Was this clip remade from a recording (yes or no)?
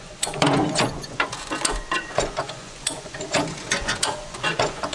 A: yes